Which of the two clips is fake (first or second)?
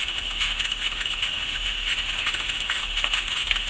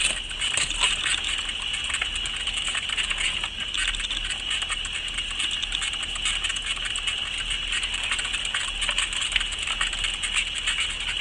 first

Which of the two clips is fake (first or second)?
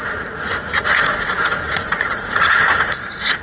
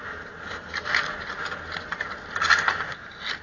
first